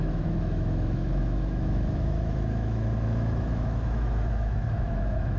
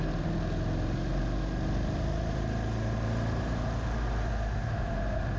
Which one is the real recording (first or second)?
second